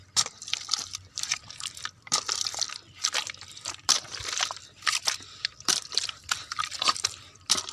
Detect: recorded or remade remade